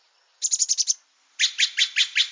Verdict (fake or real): real